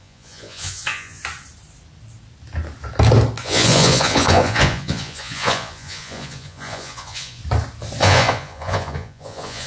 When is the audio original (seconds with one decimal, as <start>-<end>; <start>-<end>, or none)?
1.2-3.4; 7.4-8.0